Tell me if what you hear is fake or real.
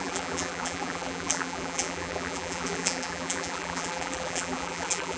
fake